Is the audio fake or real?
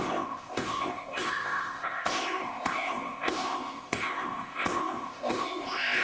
fake